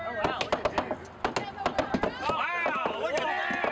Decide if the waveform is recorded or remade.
recorded